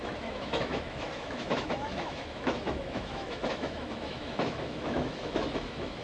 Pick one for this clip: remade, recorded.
remade